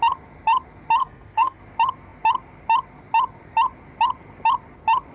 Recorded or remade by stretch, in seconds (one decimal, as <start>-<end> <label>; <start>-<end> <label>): 0.0-1.0 recorded; 1.0-1.6 remade; 1.6-5.1 recorded